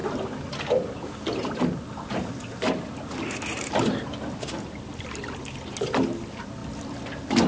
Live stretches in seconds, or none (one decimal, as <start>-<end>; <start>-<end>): 0.0-7.5